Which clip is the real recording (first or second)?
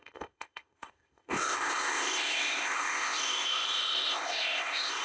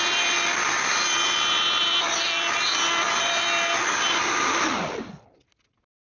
second